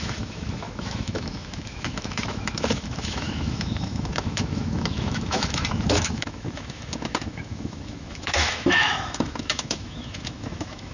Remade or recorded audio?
remade